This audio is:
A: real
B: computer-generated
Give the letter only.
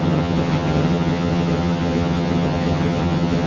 B